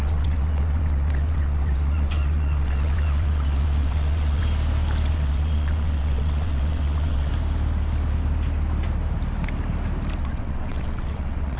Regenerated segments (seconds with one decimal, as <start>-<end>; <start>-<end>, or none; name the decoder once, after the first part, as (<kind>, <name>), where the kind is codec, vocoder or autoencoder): 0.0-4.4 (vocoder, WaveNeXt); 5.1-7.3; 10.2-11.6